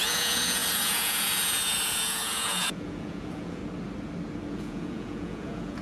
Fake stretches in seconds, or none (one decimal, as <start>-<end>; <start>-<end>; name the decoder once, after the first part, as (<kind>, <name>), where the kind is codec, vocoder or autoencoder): 0.0-3.6 (vocoder, Vocos); 4.5-5.8